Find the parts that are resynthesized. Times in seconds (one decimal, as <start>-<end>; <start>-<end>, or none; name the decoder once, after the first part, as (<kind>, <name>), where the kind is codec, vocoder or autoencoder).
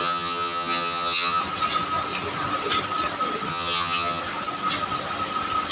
0.0-1.4 (vocoder, HiFi-GAN); 3.5-4.2